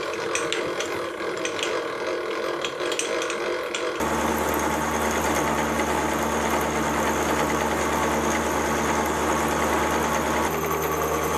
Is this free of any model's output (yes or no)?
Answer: yes